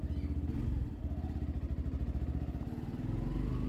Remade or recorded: recorded